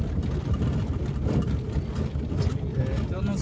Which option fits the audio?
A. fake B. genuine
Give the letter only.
B